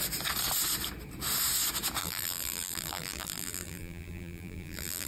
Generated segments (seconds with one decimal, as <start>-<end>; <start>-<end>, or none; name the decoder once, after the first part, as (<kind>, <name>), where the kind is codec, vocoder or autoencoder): 2.0-5.1 (vocoder, BigVGAN v2)